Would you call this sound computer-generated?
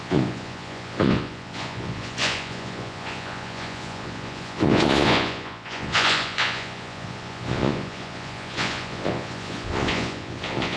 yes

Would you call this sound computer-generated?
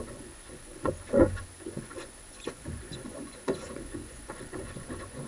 yes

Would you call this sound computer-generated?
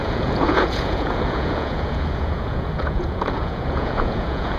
yes